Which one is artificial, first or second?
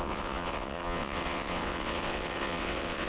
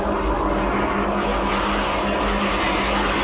first